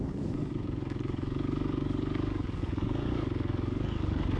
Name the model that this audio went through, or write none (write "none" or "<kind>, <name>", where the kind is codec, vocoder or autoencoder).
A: codec, DAC